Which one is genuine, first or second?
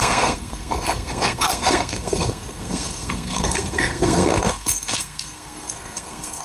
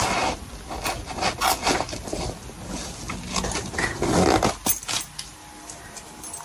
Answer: second